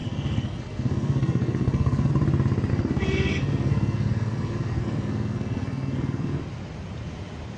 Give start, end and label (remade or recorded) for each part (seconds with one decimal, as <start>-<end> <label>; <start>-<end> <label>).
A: 0.0-2.1 remade; 2.1-2.7 recorded; 2.7-6.4 remade; 6.4-7.6 recorded